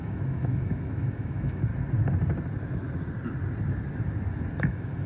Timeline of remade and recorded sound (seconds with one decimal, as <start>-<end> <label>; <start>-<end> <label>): 0.0-1.7 remade; 1.7-4.6 recorded; 4.6-5.1 remade